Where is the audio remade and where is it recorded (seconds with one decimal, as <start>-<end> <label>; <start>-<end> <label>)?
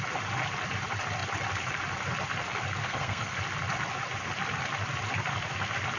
0.0-2.8 recorded; 2.8-3.4 remade; 3.4-6.0 recorded